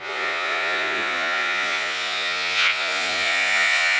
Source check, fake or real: fake